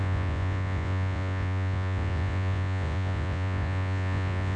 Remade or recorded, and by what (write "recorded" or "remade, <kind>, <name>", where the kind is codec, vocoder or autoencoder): remade, vocoder, Vocos